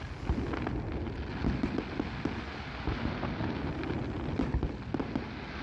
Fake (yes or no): no